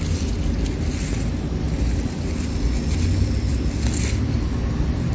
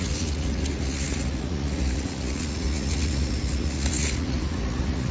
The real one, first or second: first